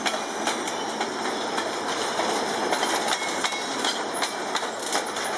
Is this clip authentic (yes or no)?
yes